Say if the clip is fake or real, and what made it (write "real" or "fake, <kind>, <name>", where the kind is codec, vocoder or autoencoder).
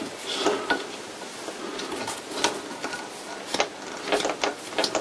real